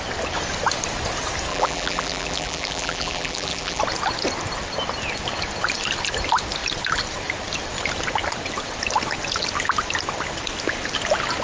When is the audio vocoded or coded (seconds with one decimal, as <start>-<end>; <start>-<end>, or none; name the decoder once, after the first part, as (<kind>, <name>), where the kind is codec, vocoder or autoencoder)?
1.5-3.8 (vocoder, BigVGAN v2)